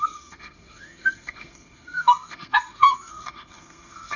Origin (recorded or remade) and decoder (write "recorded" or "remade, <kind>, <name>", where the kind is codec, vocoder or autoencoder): remade, codec, SNAC